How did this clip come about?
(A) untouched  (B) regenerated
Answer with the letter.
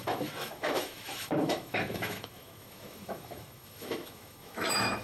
B